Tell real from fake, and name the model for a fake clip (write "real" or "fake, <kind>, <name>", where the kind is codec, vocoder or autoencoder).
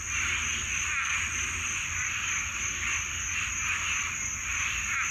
real